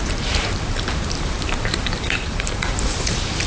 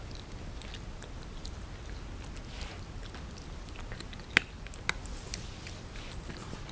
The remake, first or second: first